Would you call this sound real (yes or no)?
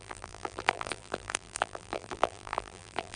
no